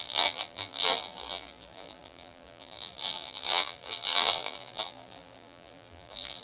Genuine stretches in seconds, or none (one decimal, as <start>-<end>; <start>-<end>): none